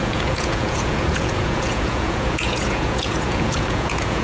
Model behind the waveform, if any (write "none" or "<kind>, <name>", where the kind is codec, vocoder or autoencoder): vocoder, Vocos